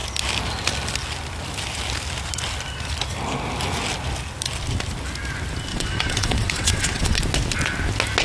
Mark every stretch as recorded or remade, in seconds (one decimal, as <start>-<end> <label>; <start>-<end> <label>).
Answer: 0.0-5.7 recorded; 5.7-7.2 remade; 7.2-8.2 recorded